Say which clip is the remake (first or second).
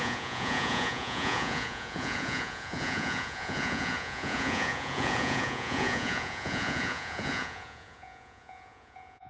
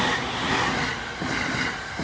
first